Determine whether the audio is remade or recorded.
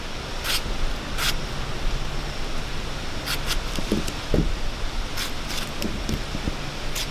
recorded